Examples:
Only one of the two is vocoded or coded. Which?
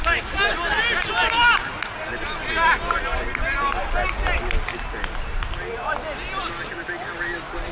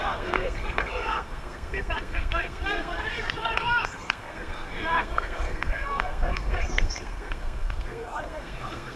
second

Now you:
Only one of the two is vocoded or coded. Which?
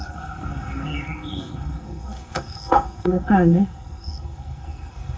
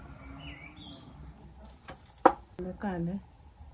first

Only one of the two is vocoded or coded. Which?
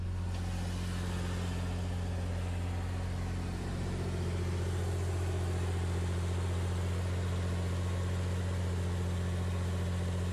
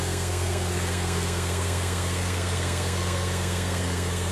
second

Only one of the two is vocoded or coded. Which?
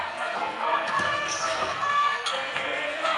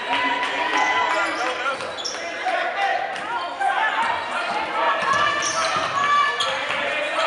first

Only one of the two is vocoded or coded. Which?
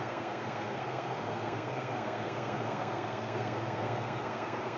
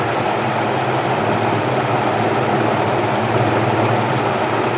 first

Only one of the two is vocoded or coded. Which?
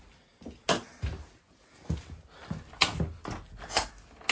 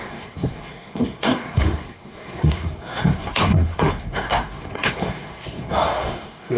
second